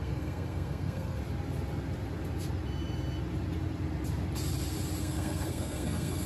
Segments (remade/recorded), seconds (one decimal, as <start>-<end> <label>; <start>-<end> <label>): 0.0-1.2 remade; 1.2-5.0 recorded; 5.0-6.3 remade